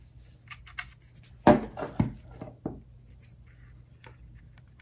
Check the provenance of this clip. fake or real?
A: real